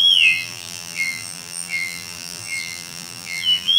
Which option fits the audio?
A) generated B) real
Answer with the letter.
A